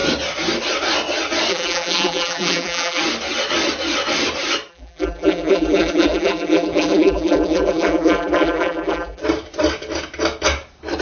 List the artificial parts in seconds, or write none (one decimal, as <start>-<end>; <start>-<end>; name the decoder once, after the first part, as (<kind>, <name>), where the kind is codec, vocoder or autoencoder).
1.5-3.0 (vocoder, BigVGAN v2); 4.7-9.2